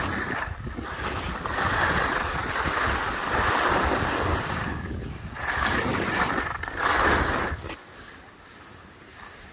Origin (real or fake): real